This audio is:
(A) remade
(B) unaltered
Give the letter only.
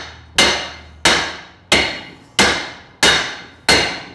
B